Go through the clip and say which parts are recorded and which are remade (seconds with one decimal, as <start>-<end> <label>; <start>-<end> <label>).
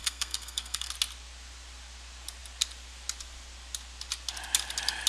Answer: 0.0-0.9 remade; 0.9-5.1 recorded